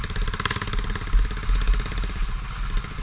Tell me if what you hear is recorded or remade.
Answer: recorded